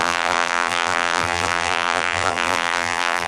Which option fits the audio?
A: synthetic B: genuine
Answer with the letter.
A